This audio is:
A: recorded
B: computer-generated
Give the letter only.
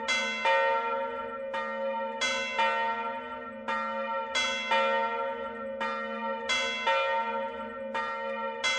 A